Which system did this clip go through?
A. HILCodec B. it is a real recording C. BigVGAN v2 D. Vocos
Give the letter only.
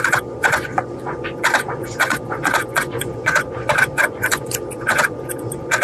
D